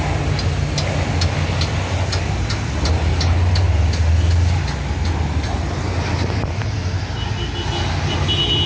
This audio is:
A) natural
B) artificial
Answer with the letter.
A